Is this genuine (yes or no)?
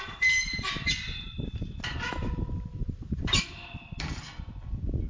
no